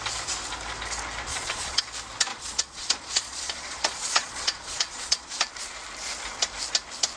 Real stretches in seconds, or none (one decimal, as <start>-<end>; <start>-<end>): 0.0-1.3; 1.8-2.3; 5.4-7.2

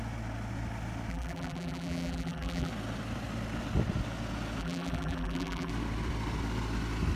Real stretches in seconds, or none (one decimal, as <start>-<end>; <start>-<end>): 0.0-1.1; 2.7-4.6; 5.7-7.2

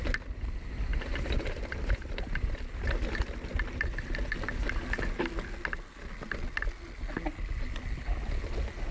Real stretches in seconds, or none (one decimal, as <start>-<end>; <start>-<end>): 0.0-0.9; 2.2-8.9

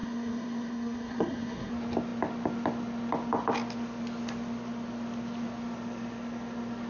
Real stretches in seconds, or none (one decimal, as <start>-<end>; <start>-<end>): 1.7-6.9